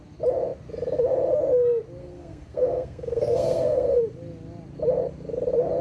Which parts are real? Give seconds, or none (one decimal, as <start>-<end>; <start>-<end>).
0.0-2.0; 4.0-5.8